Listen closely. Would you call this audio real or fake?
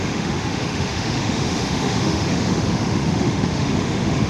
fake